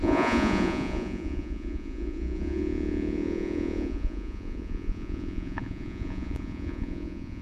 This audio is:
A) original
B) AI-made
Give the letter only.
B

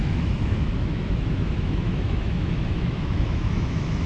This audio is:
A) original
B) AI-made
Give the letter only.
B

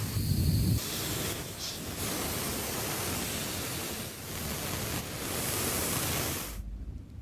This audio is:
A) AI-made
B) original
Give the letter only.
B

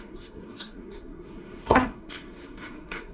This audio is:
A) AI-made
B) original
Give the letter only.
A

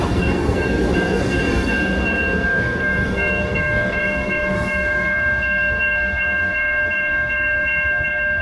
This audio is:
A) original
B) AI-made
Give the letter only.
B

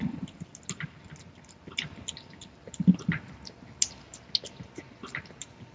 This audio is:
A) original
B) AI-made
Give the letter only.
A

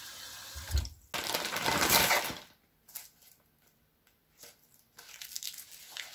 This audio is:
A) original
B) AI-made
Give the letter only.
A